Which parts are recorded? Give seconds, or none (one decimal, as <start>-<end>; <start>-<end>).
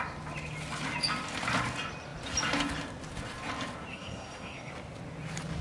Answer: 0.0-3.9; 4.7-5.6